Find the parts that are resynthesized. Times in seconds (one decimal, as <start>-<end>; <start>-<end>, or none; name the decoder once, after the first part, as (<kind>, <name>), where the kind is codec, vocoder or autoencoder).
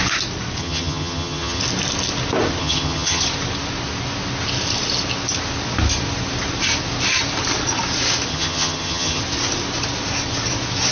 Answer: 0.6-1.6 (vocoder, HiFi-GAN); 2.6-3.2; 8.3-9.2